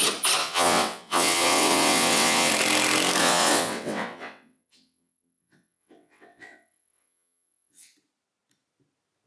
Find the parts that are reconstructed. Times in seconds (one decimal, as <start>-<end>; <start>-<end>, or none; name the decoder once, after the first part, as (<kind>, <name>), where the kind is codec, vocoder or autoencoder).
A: 0.4-2.5 (vocoder, WaveNeXt); 3.2-7.9